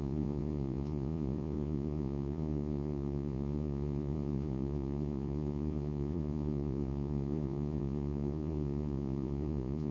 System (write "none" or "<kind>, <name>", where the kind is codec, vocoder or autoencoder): vocoder, Vocos